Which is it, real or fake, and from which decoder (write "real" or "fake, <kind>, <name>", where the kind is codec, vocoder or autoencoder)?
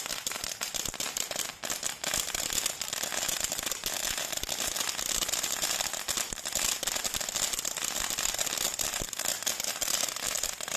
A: real